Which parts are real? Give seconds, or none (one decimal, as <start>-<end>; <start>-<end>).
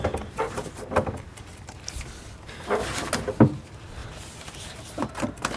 0.0-4.0; 5.1-5.6